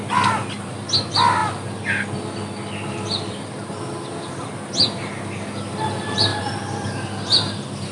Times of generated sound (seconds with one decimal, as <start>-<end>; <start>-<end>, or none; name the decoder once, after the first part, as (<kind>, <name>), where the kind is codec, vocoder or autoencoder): 1.4-4.4 (vocoder, BigVGAN v2); 6.3-7.9